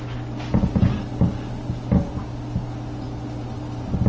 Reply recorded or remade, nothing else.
recorded